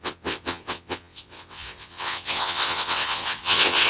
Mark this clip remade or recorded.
remade